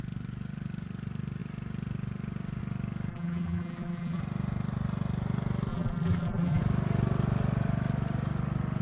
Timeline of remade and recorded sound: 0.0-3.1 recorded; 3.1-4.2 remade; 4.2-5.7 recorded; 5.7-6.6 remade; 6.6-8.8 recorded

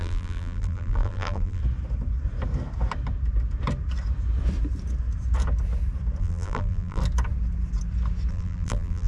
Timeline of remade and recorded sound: 0.0-1.6 remade; 1.6-6.2 recorded; 6.2-7.0 remade; 7.0-8.3 recorded; 8.3-9.1 remade

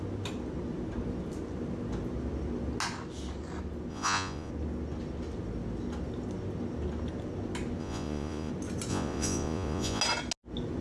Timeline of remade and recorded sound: 0.0-3.9 recorded; 3.9-4.5 remade; 4.5-7.8 recorded; 7.8-8.5 remade; 8.5-8.9 recorded; 8.9-10.0 remade; 10.0-10.8 recorded

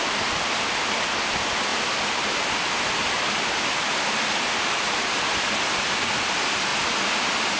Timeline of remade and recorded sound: 0.0-7.6 recorded

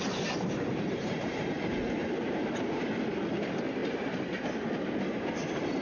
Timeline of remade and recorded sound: 0.0-0.7 recorded; 0.7-1.3 remade; 1.3-2.0 recorded; 2.0-3.0 remade; 3.0-5.8 recorded

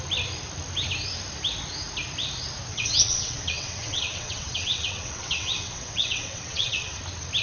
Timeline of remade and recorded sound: 0.0-2.7 recorded; 2.7-7.0 remade; 7.0-7.4 recorded

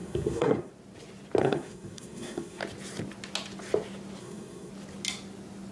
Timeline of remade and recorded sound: 0.0-0.7 remade; 0.7-1.4 recorded; 1.4-2.6 remade; 2.6-4.2 recorded; 4.2-4.7 remade; 4.7-5.7 recorded

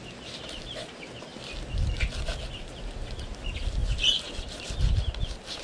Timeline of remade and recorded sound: 0.0-5.6 recorded